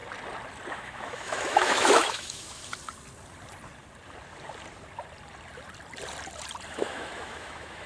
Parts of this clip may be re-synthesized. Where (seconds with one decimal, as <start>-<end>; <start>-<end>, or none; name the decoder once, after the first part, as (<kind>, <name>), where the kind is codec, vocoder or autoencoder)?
0.7-2.6 (autoencoder, DAC-VAE); 6.7-7.9